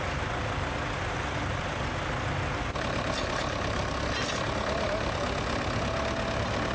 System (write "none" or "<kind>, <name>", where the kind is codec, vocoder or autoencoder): none